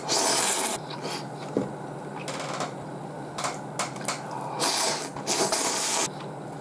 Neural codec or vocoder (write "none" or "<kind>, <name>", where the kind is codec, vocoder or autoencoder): none